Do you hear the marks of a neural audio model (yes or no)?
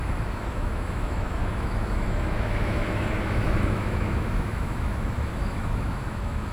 yes